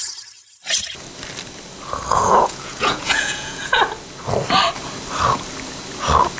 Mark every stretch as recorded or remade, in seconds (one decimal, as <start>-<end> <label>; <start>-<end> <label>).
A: 0.0-2.1 recorded; 2.1-3.8 remade; 3.8-6.4 recorded